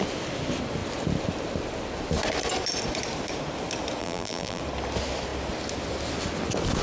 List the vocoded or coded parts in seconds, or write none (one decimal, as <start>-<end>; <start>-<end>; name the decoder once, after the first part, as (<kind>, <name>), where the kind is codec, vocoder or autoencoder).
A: 4.0-4.6 (vocoder, BigVGAN v2)